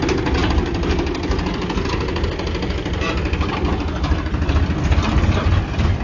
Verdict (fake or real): real